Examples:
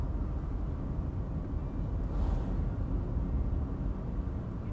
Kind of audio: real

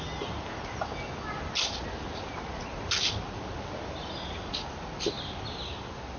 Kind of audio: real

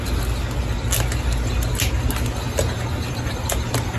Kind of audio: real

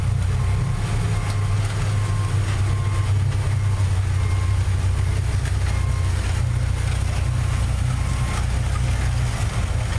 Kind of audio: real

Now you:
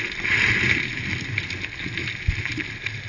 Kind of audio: real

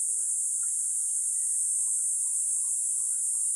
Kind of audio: real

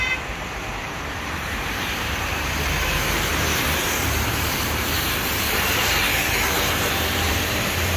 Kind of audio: fake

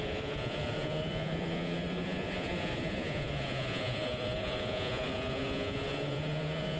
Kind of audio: fake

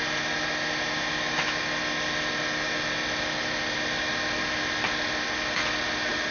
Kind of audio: real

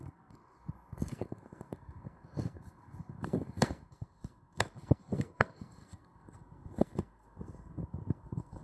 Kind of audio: fake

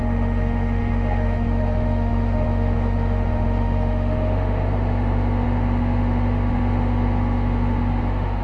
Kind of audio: fake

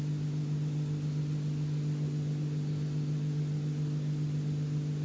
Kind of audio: real